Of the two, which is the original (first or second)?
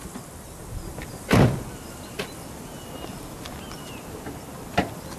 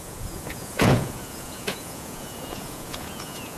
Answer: first